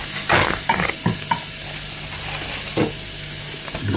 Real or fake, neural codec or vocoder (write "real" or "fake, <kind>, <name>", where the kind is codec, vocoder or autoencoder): real